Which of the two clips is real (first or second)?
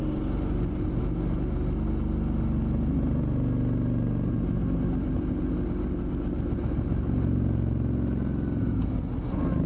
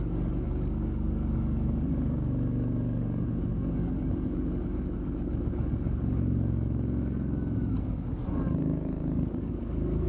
first